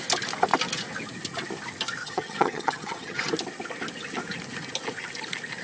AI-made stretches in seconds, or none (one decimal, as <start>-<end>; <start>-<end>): 2.0-3.3